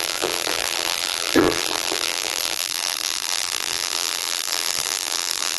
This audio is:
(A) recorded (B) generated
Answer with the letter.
B